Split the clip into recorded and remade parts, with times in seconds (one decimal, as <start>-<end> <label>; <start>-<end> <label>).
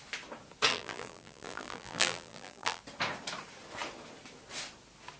0.0-0.7 recorded; 0.7-2.8 remade; 2.8-5.2 recorded